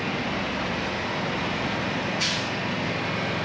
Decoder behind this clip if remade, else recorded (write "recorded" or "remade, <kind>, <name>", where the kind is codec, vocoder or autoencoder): recorded